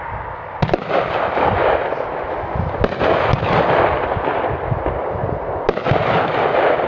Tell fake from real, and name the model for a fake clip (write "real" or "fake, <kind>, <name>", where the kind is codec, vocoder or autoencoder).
real